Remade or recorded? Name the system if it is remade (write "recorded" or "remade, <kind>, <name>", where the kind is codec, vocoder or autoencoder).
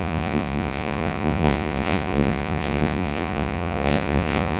remade, vocoder, Vocos